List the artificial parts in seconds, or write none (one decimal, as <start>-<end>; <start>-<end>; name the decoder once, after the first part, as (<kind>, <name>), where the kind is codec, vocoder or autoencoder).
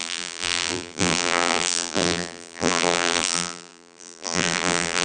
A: 0.0-5.0 (vocoder, BigVGAN v2)